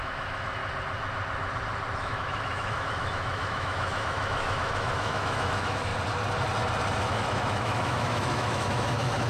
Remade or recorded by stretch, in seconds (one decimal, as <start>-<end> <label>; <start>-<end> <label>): 0.0-0.6 remade; 0.6-2.0 recorded; 2.0-5.9 remade; 5.9-7.0 recorded; 7.0-9.3 remade